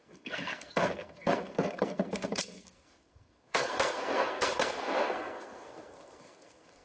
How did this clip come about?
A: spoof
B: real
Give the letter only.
A